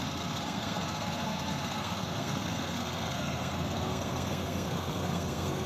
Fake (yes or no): yes